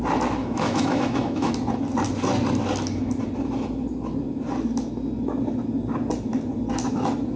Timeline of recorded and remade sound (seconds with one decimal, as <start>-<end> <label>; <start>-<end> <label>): 0.0-0.4 recorded; 0.4-1.5 remade; 1.5-7.4 recorded